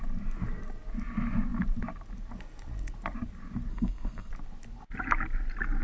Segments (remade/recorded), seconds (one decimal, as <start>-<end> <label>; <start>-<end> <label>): 0.0-3.7 recorded; 3.7-4.3 remade; 4.3-5.8 recorded